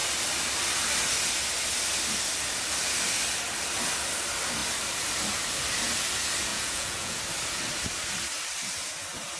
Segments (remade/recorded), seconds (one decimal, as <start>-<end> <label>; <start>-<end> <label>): 0.0-6.5 recorded; 6.5-7.2 remade; 7.2-9.4 recorded